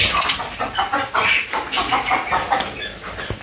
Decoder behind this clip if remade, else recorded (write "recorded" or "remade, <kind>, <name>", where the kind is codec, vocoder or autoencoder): recorded